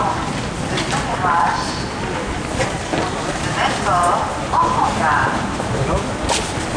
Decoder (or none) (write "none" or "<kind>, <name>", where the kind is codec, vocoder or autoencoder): none